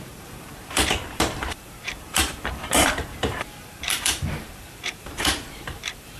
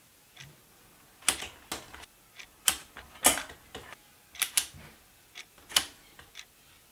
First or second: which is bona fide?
second